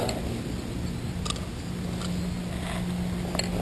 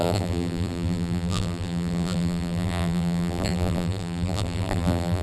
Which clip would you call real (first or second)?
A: first